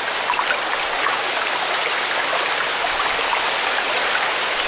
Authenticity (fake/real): real